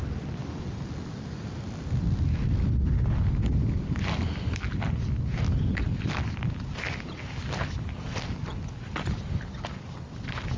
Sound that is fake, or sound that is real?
real